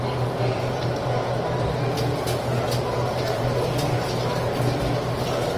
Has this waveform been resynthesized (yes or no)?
no